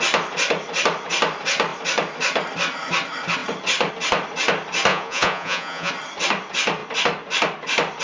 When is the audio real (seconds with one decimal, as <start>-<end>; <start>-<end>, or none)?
0.0-4.9; 5.9-8.0